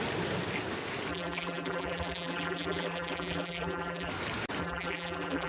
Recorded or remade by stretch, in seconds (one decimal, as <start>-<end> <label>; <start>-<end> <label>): 0.0-1.1 recorded; 1.1-4.1 remade; 4.1-4.6 recorded; 4.6-5.5 remade